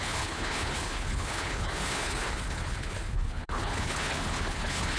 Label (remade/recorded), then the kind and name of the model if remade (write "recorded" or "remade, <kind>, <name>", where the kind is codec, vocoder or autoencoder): remade, codec, HILCodec